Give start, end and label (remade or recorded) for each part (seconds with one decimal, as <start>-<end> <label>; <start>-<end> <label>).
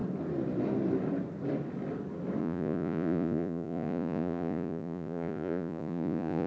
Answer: 0.0-2.4 recorded; 2.4-6.5 remade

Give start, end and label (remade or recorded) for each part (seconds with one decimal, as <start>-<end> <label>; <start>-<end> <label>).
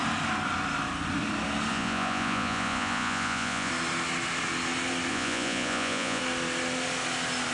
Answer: 0.0-1.7 recorded; 1.7-3.7 remade; 3.7-5.1 recorded; 5.1-6.2 remade; 6.2-7.5 recorded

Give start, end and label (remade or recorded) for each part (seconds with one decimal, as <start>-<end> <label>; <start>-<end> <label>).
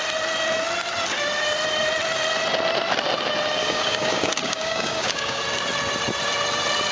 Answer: 0.0-3.6 recorded; 3.6-5.4 remade; 5.4-6.9 recorded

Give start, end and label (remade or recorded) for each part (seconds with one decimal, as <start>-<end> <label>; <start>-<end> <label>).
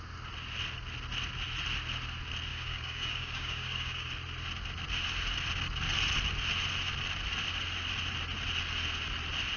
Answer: 0.0-2.5 recorded; 2.5-4.1 remade; 4.1-9.6 recorded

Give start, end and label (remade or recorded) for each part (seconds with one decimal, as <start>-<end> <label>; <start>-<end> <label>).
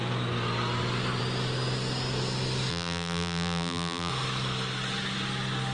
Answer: 0.0-2.7 recorded; 2.7-4.1 remade; 4.1-5.7 recorded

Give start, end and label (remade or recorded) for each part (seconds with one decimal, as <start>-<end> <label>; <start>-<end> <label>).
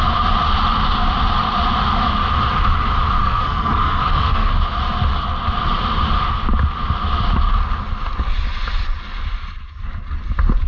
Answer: 0.0-3.2 recorded; 3.2-4.5 remade; 4.5-10.7 recorded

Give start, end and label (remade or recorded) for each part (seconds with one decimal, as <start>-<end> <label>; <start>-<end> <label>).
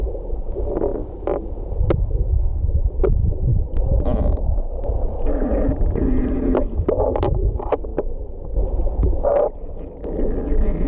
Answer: 0.0-2.5 recorded; 2.5-3.0 remade; 3.0-3.5 recorded; 3.5-5.6 remade; 5.6-10.9 recorded